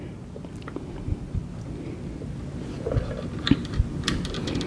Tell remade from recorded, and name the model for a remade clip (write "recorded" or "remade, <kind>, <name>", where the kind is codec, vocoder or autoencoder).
recorded